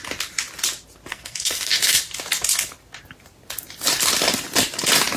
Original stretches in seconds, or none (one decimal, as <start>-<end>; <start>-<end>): 0.0-1.1; 2.0-5.2